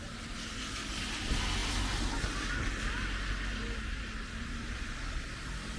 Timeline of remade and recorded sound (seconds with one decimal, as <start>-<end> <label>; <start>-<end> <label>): 0.0-5.8 recorded